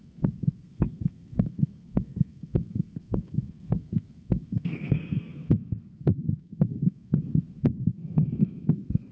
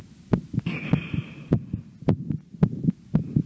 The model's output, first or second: first